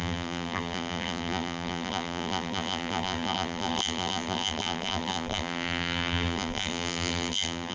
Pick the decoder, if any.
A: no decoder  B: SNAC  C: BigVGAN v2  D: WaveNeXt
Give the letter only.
C